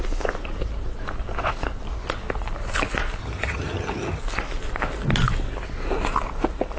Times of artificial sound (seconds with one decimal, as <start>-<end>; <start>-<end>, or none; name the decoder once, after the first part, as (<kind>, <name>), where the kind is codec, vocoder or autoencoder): 3.2-4.2 (vocoder, HiFi-GAN)